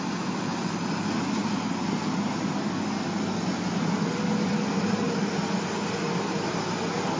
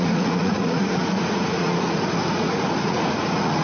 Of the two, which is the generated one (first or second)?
second